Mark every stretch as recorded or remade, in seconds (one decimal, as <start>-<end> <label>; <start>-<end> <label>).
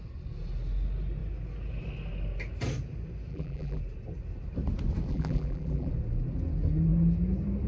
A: 0.0-3.3 recorded; 3.3-3.8 remade; 3.8-5.1 recorded; 5.1-5.9 remade; 5.9-7.7 recorded